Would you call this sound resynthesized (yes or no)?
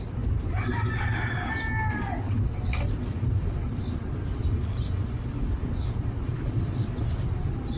no